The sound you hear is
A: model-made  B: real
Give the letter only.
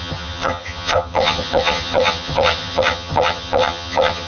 A